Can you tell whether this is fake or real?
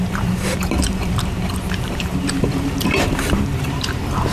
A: fake